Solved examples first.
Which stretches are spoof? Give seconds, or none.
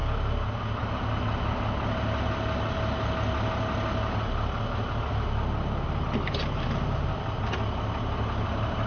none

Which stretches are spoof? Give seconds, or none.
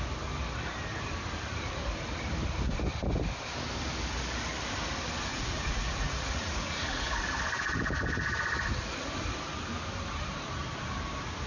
5.3-7.2 (vocoder, Vocos)